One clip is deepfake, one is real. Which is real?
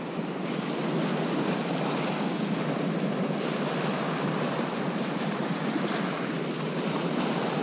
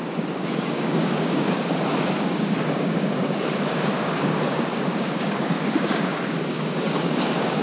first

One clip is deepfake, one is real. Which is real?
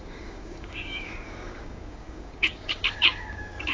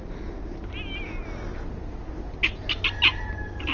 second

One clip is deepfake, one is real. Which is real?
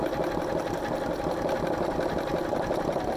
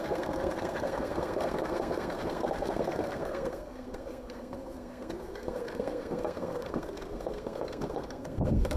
first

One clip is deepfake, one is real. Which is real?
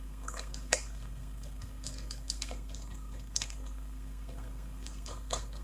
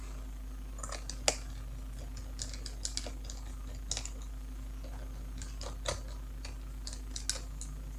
second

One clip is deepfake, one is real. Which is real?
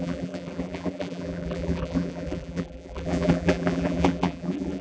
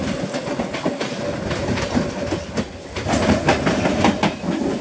second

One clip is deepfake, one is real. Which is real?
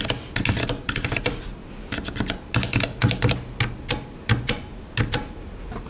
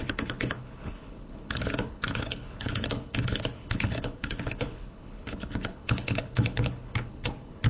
first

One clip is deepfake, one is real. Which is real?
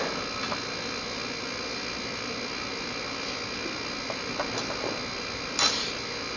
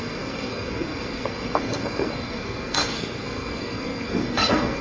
first